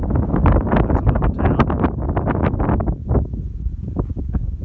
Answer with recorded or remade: recorded